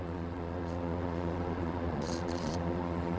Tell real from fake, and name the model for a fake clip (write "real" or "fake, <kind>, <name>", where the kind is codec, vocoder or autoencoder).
fake, vocoder, Vocos